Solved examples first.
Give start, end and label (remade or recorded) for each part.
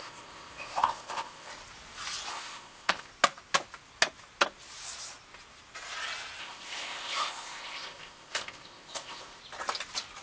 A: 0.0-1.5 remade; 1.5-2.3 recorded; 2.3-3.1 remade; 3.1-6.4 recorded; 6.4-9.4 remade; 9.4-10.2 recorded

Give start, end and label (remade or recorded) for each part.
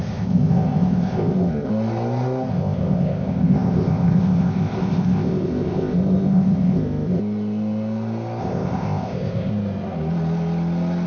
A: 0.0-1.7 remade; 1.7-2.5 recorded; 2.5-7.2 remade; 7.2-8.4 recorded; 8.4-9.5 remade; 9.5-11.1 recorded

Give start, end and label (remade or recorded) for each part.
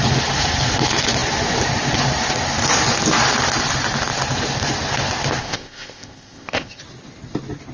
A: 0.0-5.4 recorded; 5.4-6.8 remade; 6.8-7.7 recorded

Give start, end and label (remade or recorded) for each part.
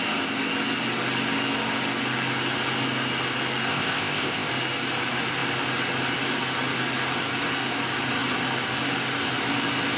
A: 0.0-3.7 recorded; 3.7-4.5 remade; 4.5-10.0 recorded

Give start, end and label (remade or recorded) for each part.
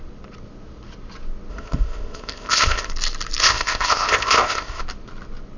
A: 0.0-1.5 recorded; 1.5-2.9 remade; 2.9-3.4 recorded; 3.4-4.8 remade; 4.8-5.6 recorded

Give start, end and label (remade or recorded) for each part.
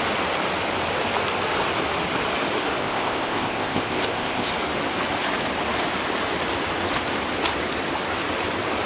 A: 0.0-2.8 recorded; 2.8-4.5 remade; 4.5-8.9 recorded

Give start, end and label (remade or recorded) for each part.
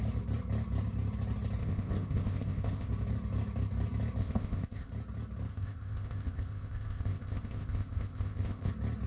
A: 0.0-1.6 recorded; 1.6-2.9 remade; 2.9-4.2 recorded; 4.2-4.9 remade; 4.9-5.5 recorded; 5.5-8.7 remade; 8.7-9.1 recorded